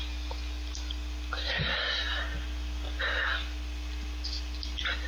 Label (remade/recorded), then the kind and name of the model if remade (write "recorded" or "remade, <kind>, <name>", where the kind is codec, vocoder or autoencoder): recorded